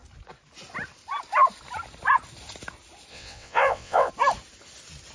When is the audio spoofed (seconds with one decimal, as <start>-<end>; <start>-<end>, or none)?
3.1-4.1